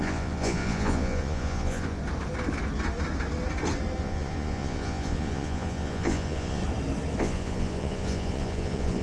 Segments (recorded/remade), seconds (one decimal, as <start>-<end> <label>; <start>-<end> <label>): 0.0-2.0 remade; 2.0-4.0 recorded; 4.0-6.6 remade; 6.6-7.2 recorded; 7.2-9.0 remade